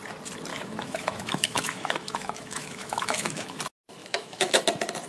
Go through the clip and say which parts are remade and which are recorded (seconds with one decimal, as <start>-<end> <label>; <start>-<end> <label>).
0.0-0.5 recorded; 0.5-3.6 remade; 3.6-4.0 recorded; 4.0-4.6 remade; 4.6-5.1 recorded